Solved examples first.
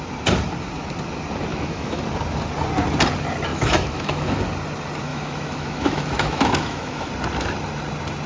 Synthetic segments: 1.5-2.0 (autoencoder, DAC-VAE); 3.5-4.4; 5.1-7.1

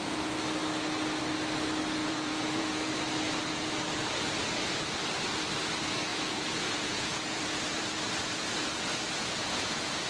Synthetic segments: 2.0-2.9 (vocoder, Vocos); 6.1-7.6; 9.2-10.1